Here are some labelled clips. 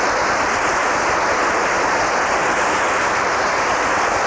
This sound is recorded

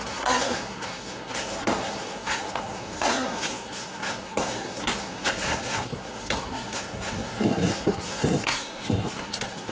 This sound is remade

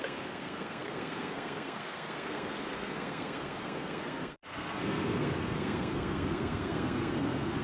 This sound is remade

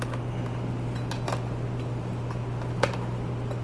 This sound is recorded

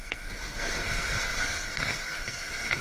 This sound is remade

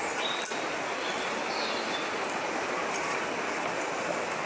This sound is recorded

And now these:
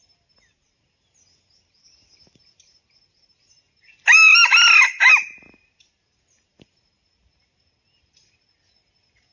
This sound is recorded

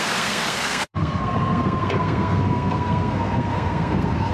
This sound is remade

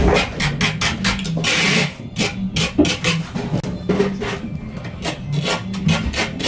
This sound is recorded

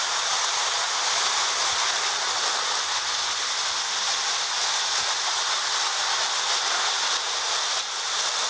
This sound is recorded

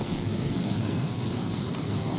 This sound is remade